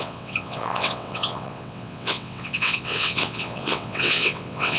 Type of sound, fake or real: fake